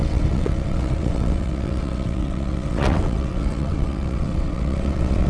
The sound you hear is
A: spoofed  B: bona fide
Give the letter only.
A